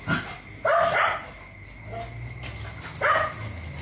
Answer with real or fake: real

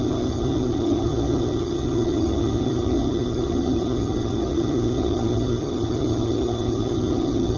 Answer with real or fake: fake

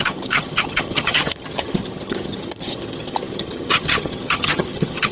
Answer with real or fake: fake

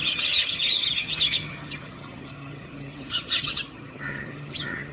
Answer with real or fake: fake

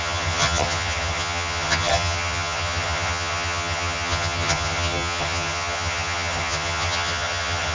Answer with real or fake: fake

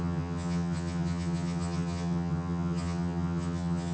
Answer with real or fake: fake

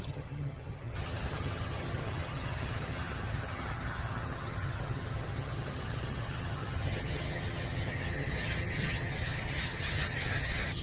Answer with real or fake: fake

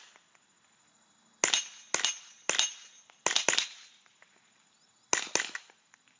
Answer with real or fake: real